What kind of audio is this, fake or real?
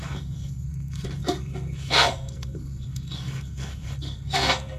fake